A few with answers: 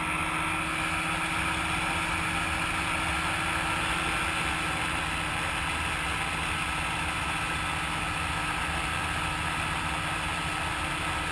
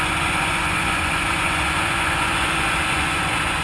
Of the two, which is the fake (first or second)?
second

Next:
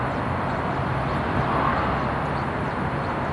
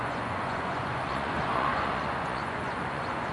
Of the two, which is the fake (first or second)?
second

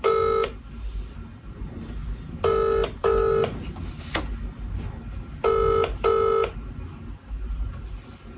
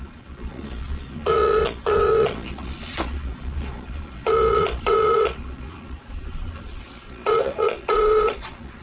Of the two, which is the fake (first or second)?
second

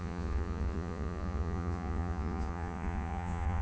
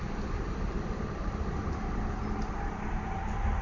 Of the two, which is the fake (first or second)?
first